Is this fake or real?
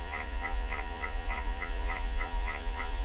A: fake